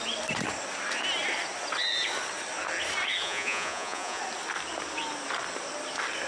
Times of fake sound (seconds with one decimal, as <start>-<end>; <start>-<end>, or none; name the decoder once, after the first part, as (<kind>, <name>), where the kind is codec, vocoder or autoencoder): 3.2-4.2 (vocoder, Vocos)